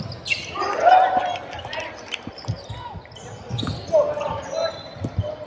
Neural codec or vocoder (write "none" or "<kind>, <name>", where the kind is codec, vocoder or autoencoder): none